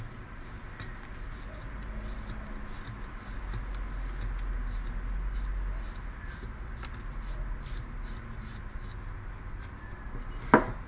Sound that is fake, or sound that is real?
real